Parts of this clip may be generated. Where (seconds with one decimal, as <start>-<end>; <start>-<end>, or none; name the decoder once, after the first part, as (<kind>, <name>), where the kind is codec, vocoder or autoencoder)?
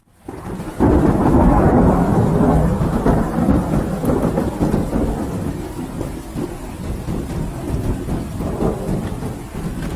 none